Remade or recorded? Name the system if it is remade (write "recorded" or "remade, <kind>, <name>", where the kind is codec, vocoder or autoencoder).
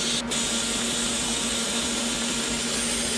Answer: recorded